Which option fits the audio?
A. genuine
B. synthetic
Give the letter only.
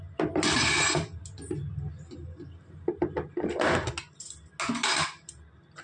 A